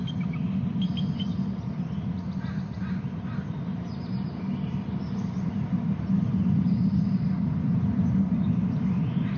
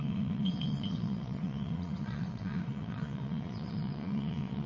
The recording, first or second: first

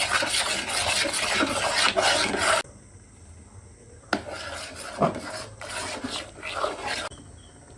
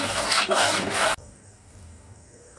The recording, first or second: first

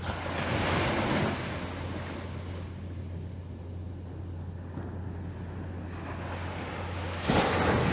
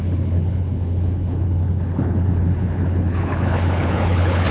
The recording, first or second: first